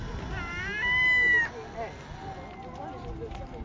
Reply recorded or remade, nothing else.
recorded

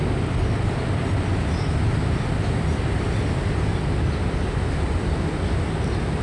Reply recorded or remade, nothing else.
recorded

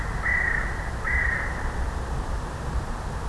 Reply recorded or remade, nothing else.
recorded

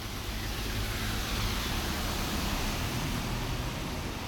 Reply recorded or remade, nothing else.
remade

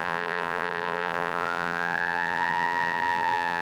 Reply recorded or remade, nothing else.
remade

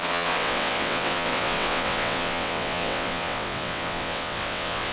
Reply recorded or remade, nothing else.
remade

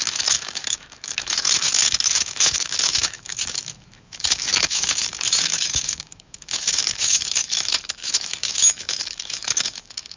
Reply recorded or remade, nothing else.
remade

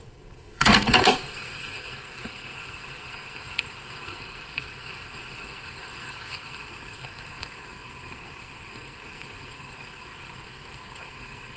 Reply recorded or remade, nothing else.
remade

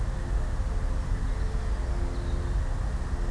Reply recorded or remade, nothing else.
recorded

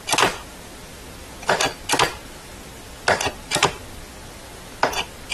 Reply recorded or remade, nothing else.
recorded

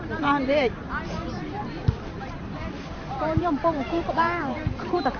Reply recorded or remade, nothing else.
remade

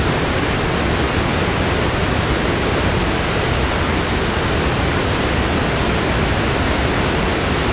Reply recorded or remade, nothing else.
recorded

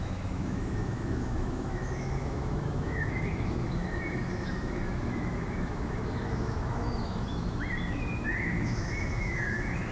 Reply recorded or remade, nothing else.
remade